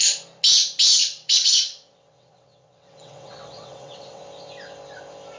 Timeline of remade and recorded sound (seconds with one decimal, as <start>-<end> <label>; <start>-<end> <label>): 0.0-1.0 recorded; 1.0-4.2 remade; 4.2-5.4 recorded

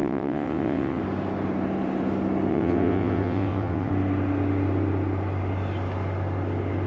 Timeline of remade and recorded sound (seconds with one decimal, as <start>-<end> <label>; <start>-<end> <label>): 0.0-1.0 remade; 1.0-2.5 recorded; 2.5-3.9 remade; 3.9-6.9 recorded

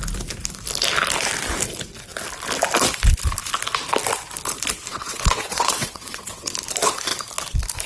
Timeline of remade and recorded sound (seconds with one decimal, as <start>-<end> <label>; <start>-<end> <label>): 0.0-4.9 recorded; 4.9-6.5 remade; 6.5-7.9 recorded

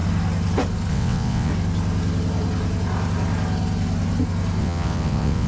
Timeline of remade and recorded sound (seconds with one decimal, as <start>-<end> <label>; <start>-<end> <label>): 0.0-0.9 recorded; 0.9-1.5 remade; 1.5-4.6 recorded; 4.6-5.5 remade

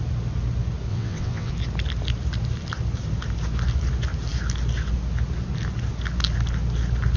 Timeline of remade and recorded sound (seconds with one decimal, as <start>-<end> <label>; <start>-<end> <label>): 0.0-0.9 recorded; 0.9-1.5 remade; 1.5-7.2 recorded

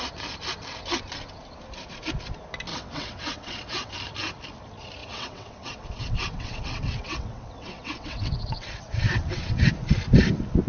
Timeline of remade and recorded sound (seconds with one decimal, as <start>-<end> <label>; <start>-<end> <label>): 0.0-2.7 recorded; 2.7-3.9 remade; 3.9-5.0 recorded; 5.0-9.7 remade; 9.7-10.7 recorded